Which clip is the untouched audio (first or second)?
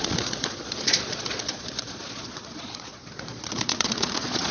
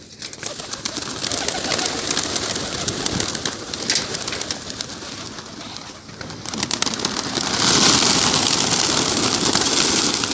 second